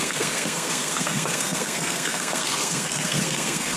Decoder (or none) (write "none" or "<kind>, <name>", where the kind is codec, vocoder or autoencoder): codec, SNAC